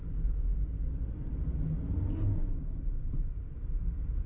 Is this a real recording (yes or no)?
no